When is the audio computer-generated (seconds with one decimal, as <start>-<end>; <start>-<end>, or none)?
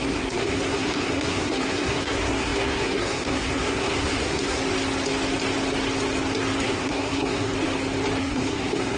0.0-4.6; 6.6-7.5; 8.2-9.0